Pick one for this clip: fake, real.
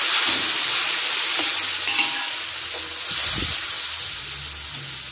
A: real